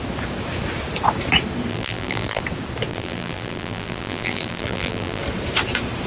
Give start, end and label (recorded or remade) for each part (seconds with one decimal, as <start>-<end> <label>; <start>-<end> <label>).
0.0-1.7 recorded; 1.7-2.4 remade; 2.4-2.9 recorded; 2.9-5.2 remade; 5.2-6.1 recorded